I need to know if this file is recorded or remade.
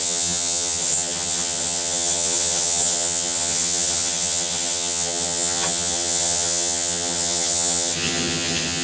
remade